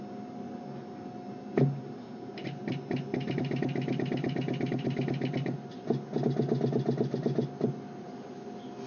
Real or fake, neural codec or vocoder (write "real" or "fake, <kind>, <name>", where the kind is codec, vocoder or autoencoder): real